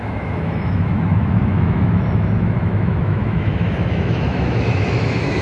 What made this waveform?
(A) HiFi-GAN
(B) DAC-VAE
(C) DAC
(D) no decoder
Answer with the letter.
B